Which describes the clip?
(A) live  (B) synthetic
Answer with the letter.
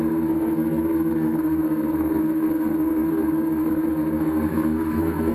B